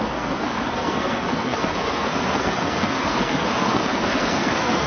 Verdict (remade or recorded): remade